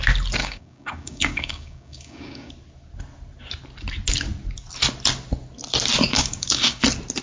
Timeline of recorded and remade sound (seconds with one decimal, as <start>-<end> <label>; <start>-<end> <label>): 0.0-0.4 recorded; 0.4-2.5 remade; 2.5-6.1 recorded; 6.1-6.8 remade; 6.8-7.2 recorded